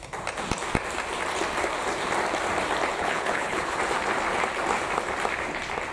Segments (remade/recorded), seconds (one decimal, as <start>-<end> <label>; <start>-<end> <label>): 0.0-2.9 recorded; 2.9-3.8 remade; 3.8-5.9 recorded